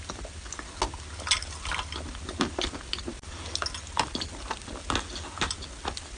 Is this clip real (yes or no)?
yes